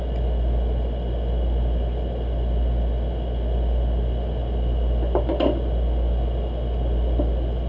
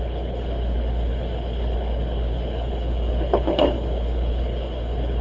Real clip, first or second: first